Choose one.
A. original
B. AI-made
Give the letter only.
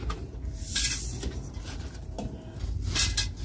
A